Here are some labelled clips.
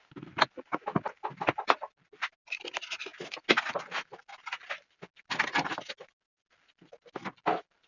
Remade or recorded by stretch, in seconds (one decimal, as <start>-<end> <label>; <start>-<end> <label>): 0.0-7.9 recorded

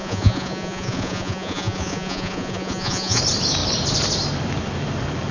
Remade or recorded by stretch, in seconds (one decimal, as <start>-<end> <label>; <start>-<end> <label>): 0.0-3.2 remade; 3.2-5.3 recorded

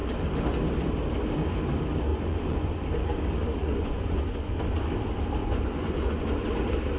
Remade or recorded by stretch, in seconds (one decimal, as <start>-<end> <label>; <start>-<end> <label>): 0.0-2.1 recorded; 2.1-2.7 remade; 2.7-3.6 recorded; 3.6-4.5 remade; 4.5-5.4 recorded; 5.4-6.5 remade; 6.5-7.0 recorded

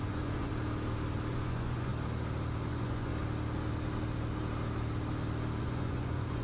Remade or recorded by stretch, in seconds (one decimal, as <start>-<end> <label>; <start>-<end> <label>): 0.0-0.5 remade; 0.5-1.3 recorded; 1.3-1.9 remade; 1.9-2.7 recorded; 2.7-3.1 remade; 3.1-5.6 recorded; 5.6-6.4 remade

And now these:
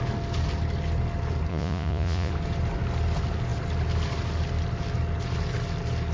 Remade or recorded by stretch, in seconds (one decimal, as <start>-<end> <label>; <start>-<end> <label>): 0.0-1.5 recorded; 1.5-2.3 remade; 2.3-6.1 recorded

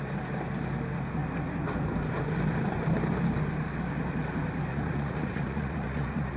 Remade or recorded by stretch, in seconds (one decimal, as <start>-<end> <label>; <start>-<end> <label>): 0.0-4.7 recorded; 4.7-6.4 remade

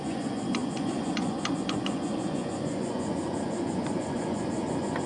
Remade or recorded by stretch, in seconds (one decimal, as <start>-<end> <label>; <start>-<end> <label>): 0.0-5.1 remade